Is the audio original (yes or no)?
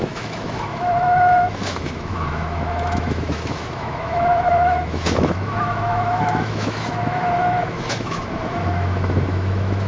no